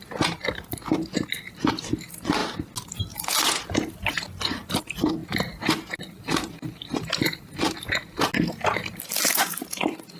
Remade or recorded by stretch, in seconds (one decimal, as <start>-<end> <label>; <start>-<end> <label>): 0.0-10.2 recorded